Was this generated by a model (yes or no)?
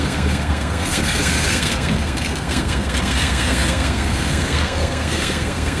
yes